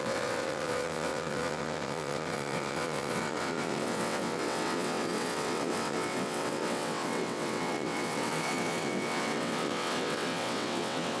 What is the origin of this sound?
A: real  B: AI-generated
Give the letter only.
B